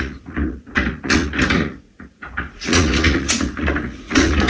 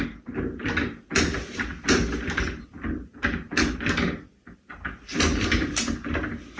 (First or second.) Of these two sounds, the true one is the second